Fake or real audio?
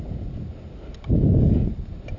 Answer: real